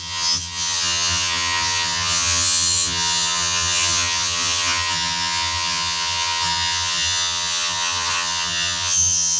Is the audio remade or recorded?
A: remade